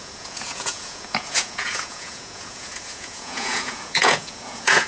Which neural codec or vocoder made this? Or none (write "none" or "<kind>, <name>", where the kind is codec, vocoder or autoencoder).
vocoder, Vocos